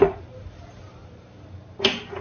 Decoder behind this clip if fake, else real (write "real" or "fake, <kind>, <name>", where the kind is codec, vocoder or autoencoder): fake, vocoder, BigVGAN v2